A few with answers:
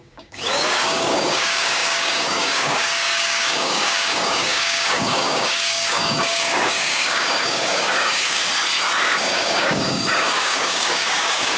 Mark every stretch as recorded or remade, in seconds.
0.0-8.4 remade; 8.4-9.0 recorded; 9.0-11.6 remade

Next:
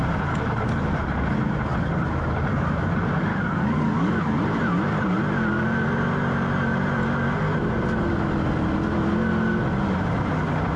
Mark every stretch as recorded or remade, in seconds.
0.0-3.3 recorded; 3.3-4.2 remade; 4.2-10.8 recorded

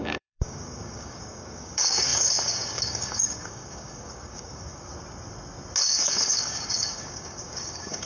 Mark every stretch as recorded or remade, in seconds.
0.0-4.9 remade; 4.9-5.8 recorded; 5.8-8.1 remade

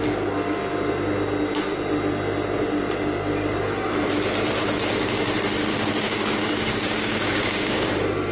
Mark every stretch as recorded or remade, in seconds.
0.0-5.7 recorded; 5.7-7.9 remade; 7.9-8.3 recorded

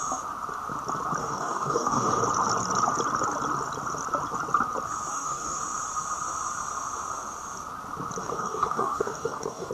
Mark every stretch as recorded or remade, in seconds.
0.0-1.2 recorded; 1.2-2.2 remade; 2.2-5.1 recorded; 5.1-5.6 remade; 5.6-8.2 recorded; 8.2-9.7 remade

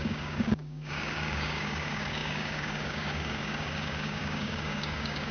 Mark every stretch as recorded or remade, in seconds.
0.0-5.3 remade

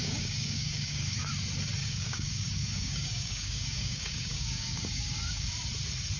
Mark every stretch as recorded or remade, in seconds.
0.0-1.3 remade; 1.3-1.8 recorded; 1.8-5.5 remade; 5.5-6.2 recorded

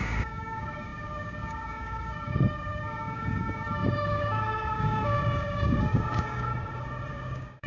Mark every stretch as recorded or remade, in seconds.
0.0-6.5 remade; 6.5-7.1 recorded; 7.1-7.7 remade